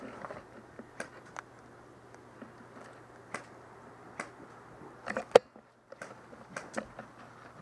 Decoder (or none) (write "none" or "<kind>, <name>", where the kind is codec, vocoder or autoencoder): none